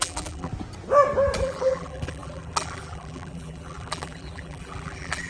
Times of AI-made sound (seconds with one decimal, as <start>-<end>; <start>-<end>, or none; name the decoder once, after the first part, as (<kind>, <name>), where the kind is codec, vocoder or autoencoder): 0.0-0.5 (vocoder, BigVGAN v2); 1.4-5.3